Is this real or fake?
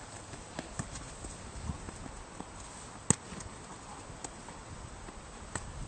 real